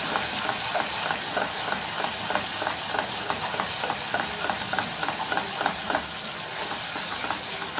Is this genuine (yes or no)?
yes